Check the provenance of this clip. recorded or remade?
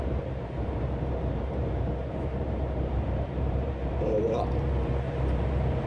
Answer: remade